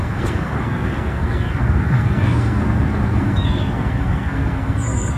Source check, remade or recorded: remade